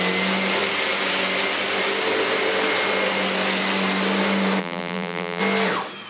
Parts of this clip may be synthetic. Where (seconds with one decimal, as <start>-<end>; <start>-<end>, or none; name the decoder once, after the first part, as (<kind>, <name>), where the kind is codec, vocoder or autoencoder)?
4.6-5.4 (vocoder, BigVGAN v2)